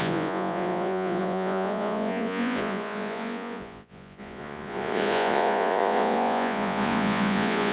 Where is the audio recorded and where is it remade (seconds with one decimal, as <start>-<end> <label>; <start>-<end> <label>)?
0.0-7.7 remade

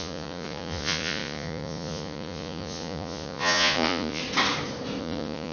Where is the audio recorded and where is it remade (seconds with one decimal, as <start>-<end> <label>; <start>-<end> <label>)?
0.0-4.2 remade; 4.2-5.0 recorded; 5.0-5.5 remade

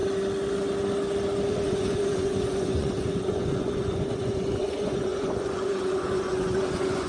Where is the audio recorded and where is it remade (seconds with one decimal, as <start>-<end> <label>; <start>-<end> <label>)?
0.0-1.5 recorded; 1.5-7.1 remade